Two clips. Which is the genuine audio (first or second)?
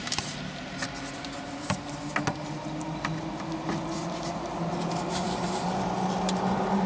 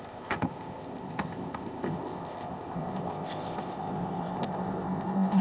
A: first